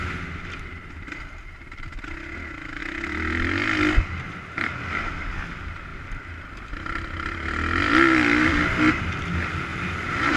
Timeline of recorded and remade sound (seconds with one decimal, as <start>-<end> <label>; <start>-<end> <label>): 0.0-9.7 recorded; 9.7-10.4 remade